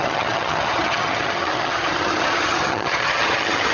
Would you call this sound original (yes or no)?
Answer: no